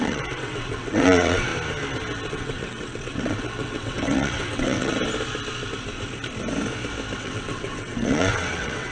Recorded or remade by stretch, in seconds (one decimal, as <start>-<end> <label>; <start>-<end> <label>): 0.0-1.5 remade; 1.5-2.3 recorded; 2.3-5.0 remade; 5.0-7.2 recorded; 7.2-8.9 remade